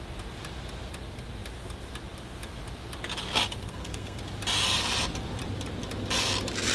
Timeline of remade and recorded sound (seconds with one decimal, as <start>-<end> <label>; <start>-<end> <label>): 0.0-3.6 recorded; 3.6-4.2 remade; 4.2-6.7 recorded